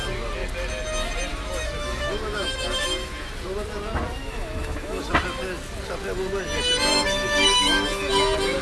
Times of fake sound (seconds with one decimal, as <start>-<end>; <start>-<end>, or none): 1.3-3.3; 4.2-5.0; 6.9-8.1